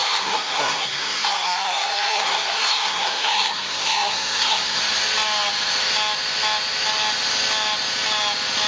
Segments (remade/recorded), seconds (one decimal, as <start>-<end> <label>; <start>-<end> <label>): 0.0-4.8 remade; 4.8-8.7 recorded